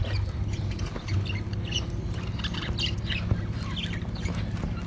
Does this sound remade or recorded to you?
recorded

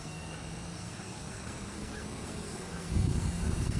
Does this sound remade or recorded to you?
remade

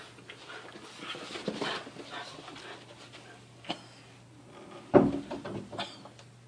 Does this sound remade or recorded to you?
recorded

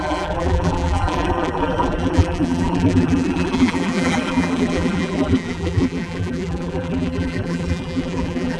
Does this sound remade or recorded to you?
remade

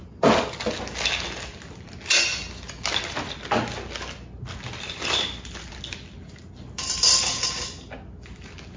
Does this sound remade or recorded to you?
recorded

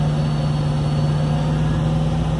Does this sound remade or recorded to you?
recorded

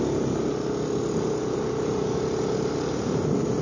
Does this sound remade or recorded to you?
recorded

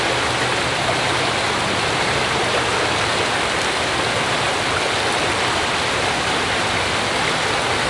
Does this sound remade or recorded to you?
recorded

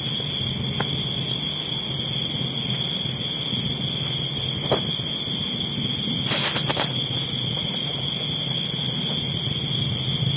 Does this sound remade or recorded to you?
recorded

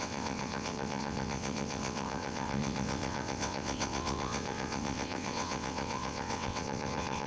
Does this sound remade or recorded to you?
remade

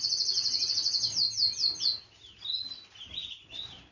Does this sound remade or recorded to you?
recorded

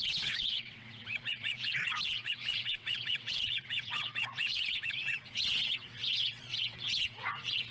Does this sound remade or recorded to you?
remade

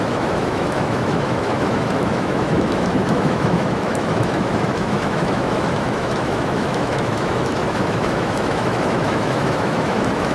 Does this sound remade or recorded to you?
remade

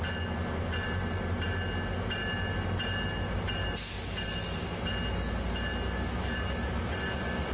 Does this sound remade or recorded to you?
recorded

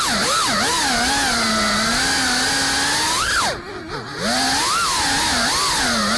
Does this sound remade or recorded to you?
recorded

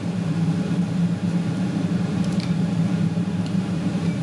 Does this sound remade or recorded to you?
remade